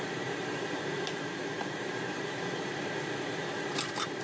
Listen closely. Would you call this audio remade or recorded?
remade